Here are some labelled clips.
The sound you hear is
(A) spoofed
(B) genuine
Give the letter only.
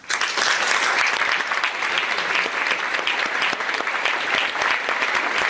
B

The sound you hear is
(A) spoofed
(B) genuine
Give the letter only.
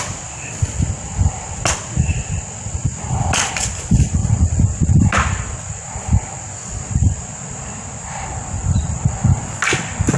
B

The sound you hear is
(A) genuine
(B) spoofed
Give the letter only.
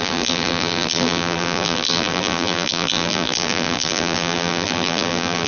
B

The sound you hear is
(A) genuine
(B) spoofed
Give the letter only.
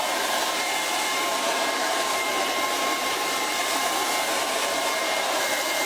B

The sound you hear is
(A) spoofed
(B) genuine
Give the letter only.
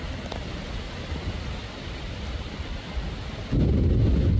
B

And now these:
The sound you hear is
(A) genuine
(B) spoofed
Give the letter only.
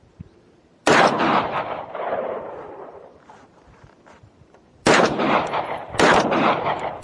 B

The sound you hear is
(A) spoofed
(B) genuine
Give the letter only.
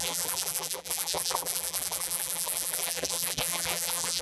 A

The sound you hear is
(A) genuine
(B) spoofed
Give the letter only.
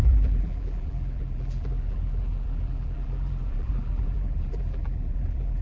B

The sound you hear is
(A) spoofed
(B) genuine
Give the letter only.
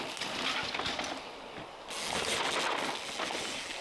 B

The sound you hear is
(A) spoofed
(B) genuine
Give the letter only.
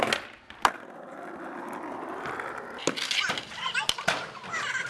B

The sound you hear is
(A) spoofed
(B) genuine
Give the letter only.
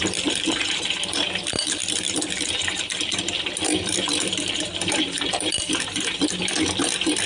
A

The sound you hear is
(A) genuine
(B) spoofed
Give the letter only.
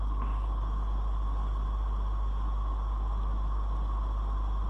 A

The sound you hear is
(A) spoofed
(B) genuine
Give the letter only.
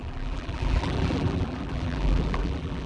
A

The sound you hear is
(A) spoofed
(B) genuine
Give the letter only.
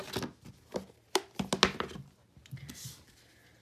B